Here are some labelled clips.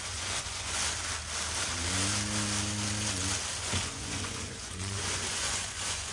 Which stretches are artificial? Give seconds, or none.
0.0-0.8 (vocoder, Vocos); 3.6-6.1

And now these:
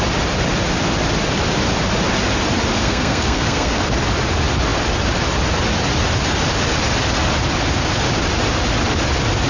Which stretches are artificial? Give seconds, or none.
2.8-3.8 (codec, SNAC)

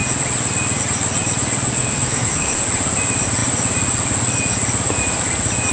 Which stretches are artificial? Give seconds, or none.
1.8-2.6 (autoencoder, DAC-VAE)

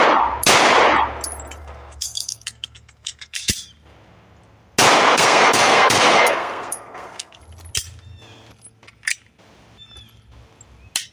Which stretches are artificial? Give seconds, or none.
1.6-3.5 (codec, SNAC); 5.1-7.4

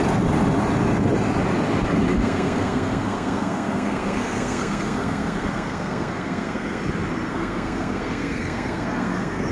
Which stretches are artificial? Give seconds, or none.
2.1-6.8 (codec, SNAC); 7.3-9.5

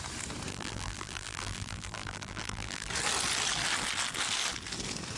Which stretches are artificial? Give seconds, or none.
0.5-2.9 (vocoder, BigVGAN v2)

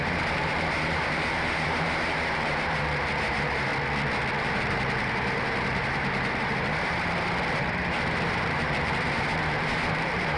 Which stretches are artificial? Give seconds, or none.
0.0-3.7 (vocoder, BigVGAN v2); 4.4-10.4

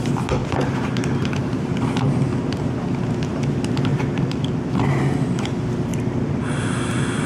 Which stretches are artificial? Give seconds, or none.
0.4-1.8 (vocoder, BigVGAN v2); 3.9-4.7; 5.9-6.4